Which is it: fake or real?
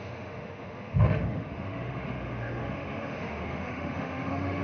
fake